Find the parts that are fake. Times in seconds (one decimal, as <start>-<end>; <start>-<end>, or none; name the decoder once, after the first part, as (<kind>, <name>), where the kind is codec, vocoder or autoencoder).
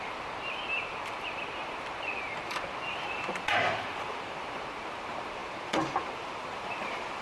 0.0-7.2 (vocoder, BigVGAN v2)